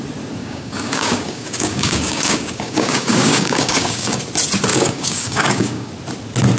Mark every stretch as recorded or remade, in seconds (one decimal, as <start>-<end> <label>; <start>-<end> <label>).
0.0-0.4 recorded; 0.4-4.2 remade; 4.2-4.7 recorded; 4.7-5.9 remade; 5.9-6.6 recorded